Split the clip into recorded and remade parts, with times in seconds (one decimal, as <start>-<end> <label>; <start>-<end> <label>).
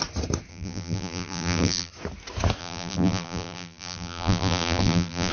0.0-0.5 recorded; 0.5-1.9 remade; 1.9-2.6 recorded; 2.6-5.3 remade